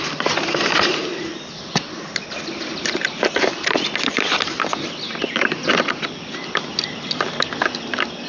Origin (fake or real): real